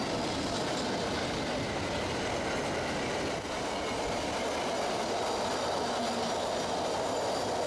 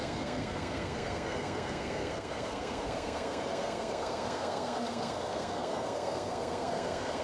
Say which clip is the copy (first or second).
second